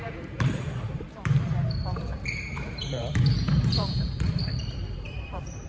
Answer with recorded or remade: remade